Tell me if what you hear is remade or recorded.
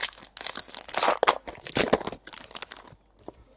recorded